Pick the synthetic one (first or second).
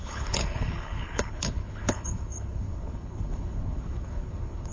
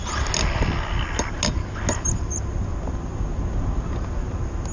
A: first